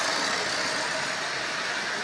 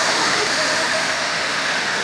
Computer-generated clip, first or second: second